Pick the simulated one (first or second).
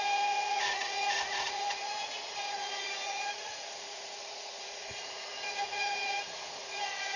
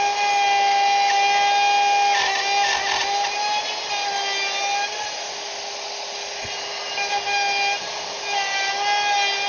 first